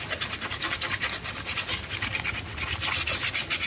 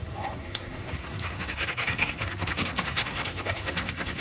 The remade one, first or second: second